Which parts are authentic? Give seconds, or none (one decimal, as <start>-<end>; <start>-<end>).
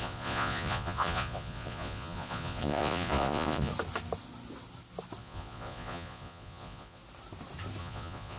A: 3.7-5.2; 7.0-7.8